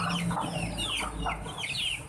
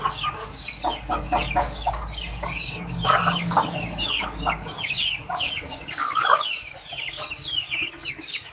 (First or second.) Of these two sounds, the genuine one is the first